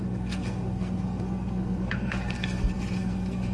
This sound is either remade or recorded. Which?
remade